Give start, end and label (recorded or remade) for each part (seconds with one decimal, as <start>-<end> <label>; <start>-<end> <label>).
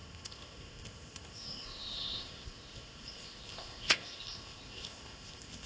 0.0-5.7 remade